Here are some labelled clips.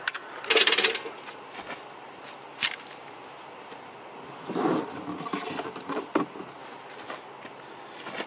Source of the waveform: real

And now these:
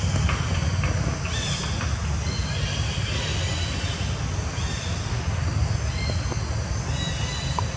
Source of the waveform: real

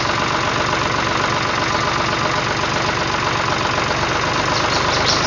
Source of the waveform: real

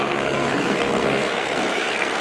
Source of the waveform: fake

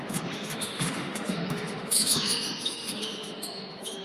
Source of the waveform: fake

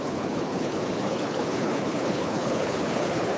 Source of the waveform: fake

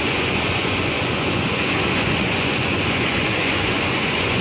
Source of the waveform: fake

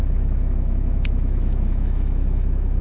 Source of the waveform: fake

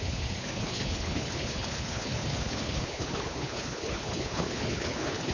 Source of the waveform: fake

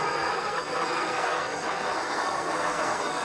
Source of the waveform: fake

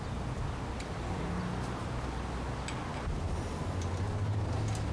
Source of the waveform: real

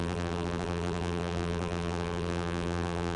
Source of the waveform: fake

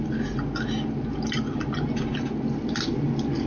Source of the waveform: real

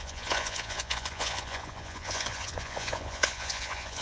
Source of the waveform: fake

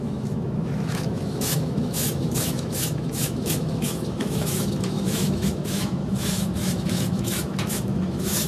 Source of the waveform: fake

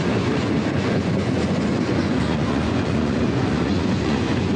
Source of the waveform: fake